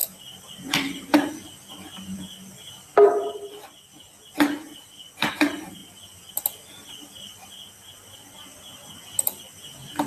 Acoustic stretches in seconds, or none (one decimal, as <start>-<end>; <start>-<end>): 0.9-10.1